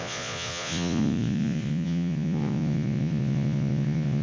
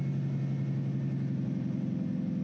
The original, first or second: second